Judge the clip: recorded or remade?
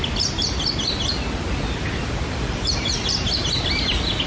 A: recorded